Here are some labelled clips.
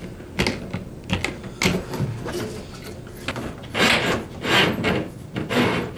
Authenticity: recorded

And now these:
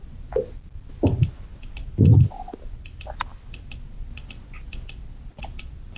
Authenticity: recorded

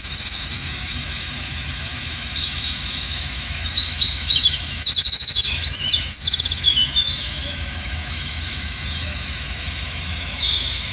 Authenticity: remade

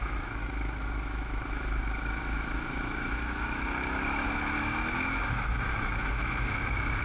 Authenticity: remade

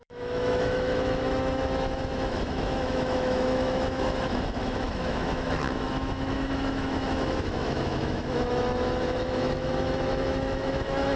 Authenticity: remade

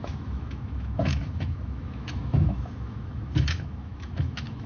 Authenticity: remade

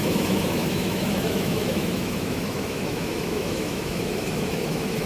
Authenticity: remade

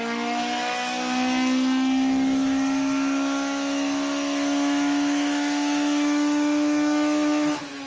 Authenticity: remade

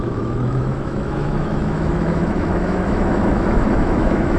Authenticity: remade